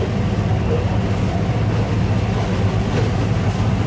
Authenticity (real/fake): real